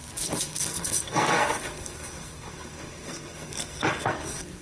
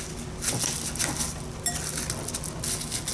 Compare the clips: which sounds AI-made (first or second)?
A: first